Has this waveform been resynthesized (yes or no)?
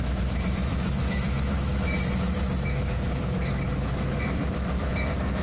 yes